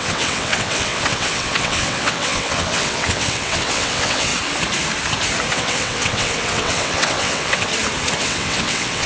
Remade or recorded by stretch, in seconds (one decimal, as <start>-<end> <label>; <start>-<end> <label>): 0.0-4.3 remade; 4.3-5.5 recorded; 5.5-7.7 remade; 7.7-8.2 recorded; 8.2-9.1 remade